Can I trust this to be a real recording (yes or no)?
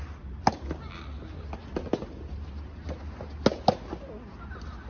yes